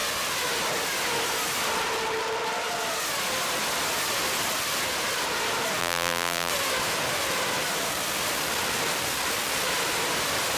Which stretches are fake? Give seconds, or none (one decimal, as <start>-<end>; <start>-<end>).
5.8-6.5